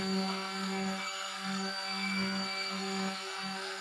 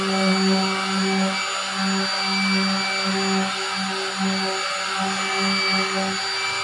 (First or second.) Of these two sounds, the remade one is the first